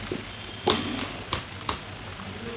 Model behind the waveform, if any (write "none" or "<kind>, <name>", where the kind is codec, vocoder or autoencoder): none